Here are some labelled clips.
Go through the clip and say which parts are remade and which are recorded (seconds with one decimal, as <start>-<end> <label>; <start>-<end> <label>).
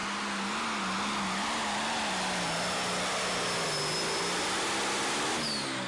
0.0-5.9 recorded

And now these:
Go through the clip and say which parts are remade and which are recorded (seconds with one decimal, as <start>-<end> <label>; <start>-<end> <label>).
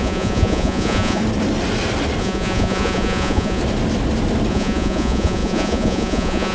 0.0-1.2 remade; 1.2-2.2 recorded; 2.2-3.6 remade; 3.6-4.5 recorded; 4.5-6.5 remade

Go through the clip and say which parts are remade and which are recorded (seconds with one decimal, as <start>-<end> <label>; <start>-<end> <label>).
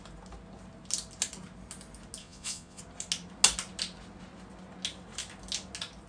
0.0-2.2 recorded; 2.2-2.8 remade; 2.8-6.1 recorded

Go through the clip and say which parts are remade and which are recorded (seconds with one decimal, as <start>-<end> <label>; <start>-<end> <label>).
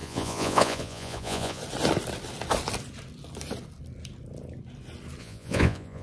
0.0-1.6 remade; 1.6-5.2 recorded; 5.2-6.0 remade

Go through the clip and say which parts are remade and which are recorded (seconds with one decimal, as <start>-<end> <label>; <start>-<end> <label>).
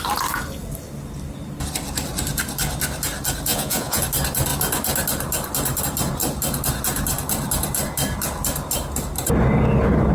0.0-3.5 recorded; 3.5-4.0 remade; 4.0-10.1 recorded